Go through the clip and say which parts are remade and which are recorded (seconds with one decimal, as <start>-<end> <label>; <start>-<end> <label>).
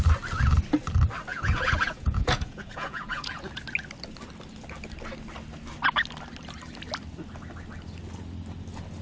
0.0-1.3 recorded; 1.3-3.4 remade; 3.4-9.0 recorded